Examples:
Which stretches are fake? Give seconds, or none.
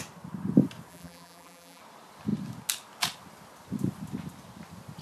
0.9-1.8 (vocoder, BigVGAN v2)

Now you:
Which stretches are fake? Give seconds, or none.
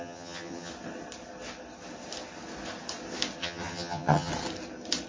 0.0-0.7 (vocoder, HiFi-GAN); 3.4-4.3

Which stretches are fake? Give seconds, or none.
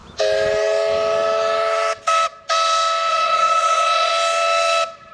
3.1-4.1 (vocoder, Vocos)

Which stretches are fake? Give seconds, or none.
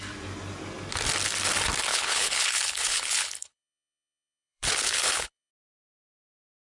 1.9-5.5 (codec, HILCodec)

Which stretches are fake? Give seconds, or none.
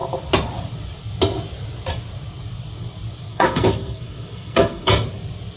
3.3-4.9 (codec, SNAC)